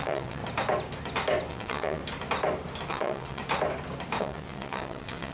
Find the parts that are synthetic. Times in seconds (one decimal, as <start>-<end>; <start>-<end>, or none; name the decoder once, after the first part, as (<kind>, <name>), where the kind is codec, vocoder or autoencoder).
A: 0.0-0.4 (vocoder, WaveNeXt); 1.5-2.0; 2.9-3.4; 4.2-5.3